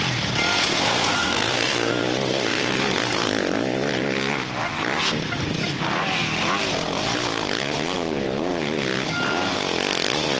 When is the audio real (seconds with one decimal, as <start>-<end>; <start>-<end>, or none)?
0.0-0.6; 1.9-2.3; 2.8-10.4